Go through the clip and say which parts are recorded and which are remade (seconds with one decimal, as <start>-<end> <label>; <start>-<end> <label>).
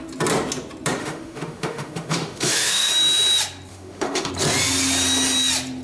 0.0-1.0 recorded; 1.0-2.9 remade; 2.9-3.7 recorded; 3.7-4.3 remade; 4.3-5.8 recorded